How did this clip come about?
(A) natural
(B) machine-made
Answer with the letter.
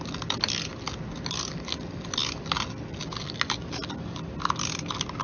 A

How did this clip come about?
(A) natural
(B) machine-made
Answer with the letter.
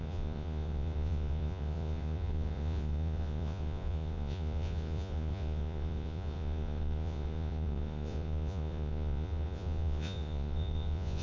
B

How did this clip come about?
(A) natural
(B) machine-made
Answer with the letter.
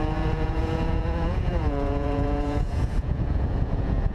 B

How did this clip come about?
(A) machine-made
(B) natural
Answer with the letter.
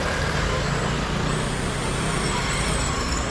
B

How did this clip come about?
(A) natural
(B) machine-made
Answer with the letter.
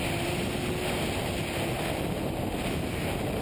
A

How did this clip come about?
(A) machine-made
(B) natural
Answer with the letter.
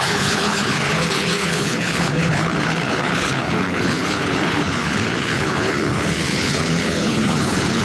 A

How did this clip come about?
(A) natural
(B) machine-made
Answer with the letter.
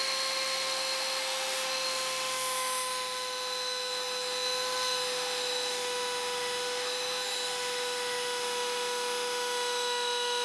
B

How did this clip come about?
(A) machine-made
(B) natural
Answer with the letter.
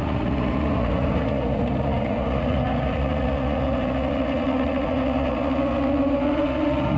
A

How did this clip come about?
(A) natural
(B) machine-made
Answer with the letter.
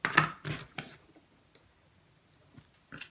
A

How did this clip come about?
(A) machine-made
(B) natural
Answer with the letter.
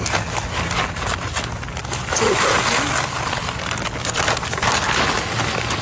B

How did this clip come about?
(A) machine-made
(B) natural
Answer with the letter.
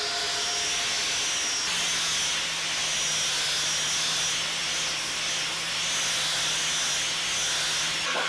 B